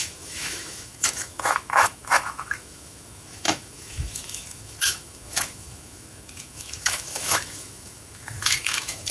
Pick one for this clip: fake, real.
fake